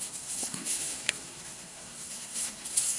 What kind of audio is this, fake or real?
fake